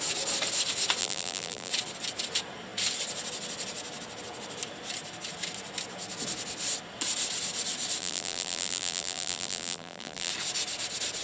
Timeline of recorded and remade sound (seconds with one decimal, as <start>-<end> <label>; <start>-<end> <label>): 0.0-1.0 recorded; 1.0-1.7 remade; 1.7-8.0 recorded; 8.0-10.3 remade; 10.3-11.2 recorded